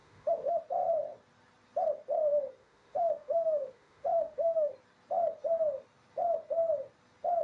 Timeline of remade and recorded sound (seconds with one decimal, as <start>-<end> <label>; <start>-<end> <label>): 0.0-0.6 remade; 0.6-2.6 recorded; 2.6-4.7 remade; 4.7-7.4 recorded